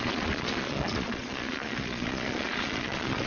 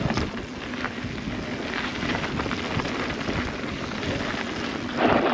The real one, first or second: second